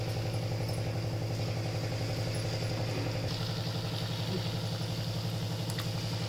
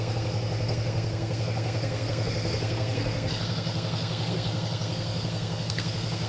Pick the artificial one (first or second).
second